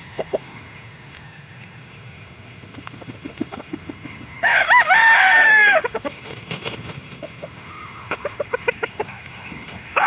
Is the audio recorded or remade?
remade